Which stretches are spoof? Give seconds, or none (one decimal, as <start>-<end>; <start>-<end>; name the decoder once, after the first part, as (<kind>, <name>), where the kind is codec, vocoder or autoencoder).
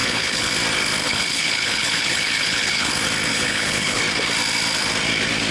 0.0-0.5 (codec, HILCodec); 1.0-2.9; 3.3-4.0